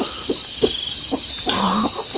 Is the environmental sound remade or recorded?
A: recorded